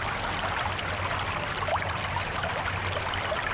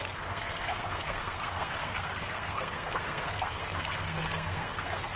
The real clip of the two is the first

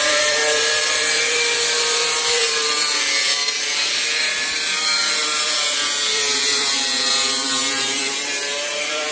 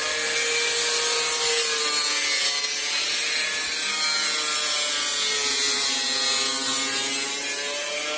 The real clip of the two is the second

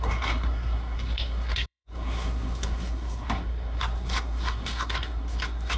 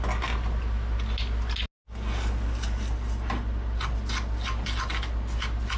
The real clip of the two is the second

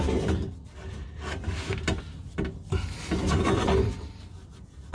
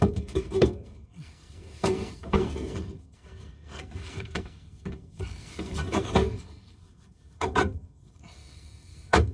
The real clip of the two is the first